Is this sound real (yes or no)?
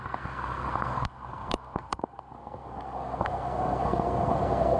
no